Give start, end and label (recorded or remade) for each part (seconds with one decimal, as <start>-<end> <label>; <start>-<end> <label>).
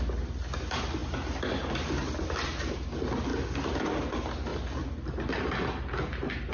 0.0-6.5 recorded